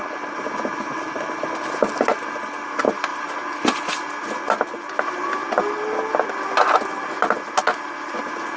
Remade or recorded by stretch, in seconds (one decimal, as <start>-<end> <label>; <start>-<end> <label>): 0.0-8.6 recorded